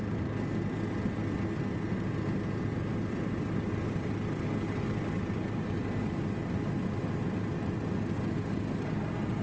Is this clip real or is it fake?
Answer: real